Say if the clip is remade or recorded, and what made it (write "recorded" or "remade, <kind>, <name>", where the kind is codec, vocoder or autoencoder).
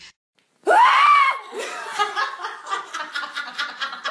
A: recorded